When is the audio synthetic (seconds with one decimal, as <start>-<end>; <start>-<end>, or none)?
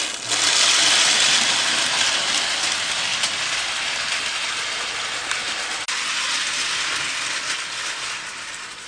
none